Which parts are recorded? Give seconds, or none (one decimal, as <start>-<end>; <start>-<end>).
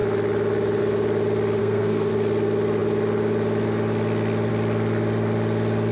0.0-1.6; 2.1-5.9